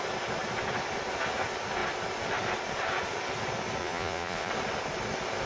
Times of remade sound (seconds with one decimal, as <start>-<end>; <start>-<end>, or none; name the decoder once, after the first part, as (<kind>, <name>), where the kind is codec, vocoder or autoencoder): 3.8-4.5 (vocoder, Vocos)

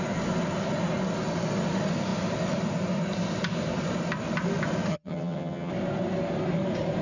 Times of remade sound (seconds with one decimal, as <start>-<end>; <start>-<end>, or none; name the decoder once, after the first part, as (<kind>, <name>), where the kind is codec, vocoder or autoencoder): 4.9-5.7 (vocoder, HiFi-GAN)

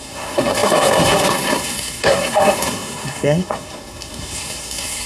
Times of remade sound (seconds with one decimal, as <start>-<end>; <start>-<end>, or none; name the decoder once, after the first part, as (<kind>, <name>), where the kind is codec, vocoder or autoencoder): 0.0-5.1 (codec, SNAC)

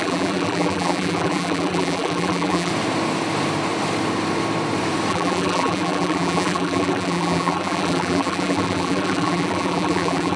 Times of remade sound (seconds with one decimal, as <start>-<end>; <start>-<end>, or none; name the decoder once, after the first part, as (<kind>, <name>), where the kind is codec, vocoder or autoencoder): 0.0-2.7 (vocoder, BigVGAN v2); 5.1-10.4

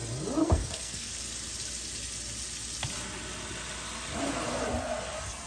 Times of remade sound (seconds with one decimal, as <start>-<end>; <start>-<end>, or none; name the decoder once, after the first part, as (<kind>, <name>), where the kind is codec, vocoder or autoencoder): 0.4-1.1 (codec, SNAC)

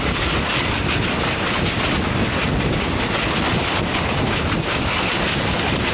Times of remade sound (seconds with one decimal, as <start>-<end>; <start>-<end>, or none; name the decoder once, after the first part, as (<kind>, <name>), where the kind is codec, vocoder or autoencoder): none

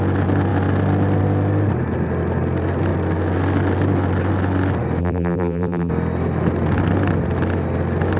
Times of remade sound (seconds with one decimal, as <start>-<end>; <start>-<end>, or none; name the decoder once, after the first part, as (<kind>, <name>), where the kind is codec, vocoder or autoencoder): 5.0-5.9 (vocoder, BigVGAN v2)

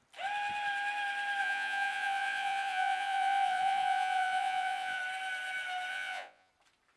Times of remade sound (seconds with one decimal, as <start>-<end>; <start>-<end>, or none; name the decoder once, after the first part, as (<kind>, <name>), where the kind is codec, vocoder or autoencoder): 1.4-5.0 (vocoder, Vocos); 5.9-6.5